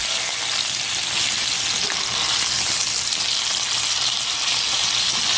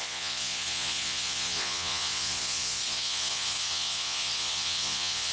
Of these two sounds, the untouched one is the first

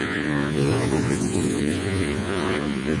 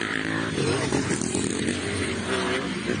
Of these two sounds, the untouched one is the second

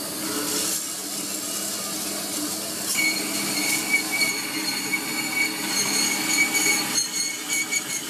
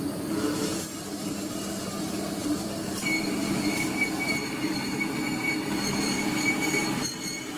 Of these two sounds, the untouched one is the first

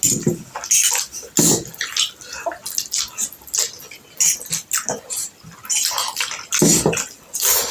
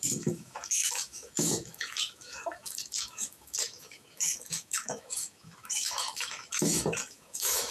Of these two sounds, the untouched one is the first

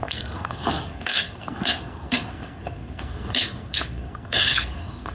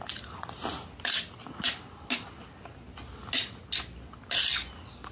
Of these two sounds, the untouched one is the second